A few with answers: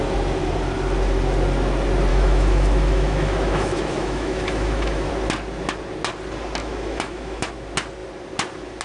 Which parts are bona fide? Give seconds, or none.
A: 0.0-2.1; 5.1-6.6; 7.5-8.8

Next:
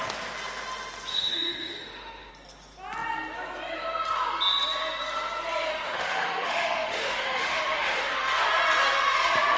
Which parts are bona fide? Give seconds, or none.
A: 0.0-1.1; 2.3-5.7; 8.1-9.6

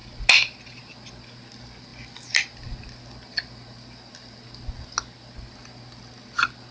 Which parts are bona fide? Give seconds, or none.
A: 0.0-6.7

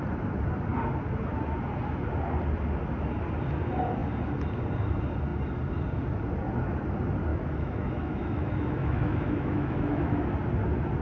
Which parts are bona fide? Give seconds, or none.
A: 0.0-7.3; 10.2-11.0

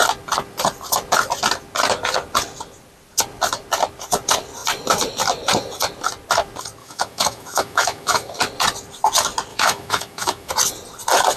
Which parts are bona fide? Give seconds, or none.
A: 0.0-6.8; 8.4-9.5; 10.5-11.4